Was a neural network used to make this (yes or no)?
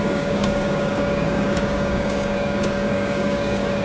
yes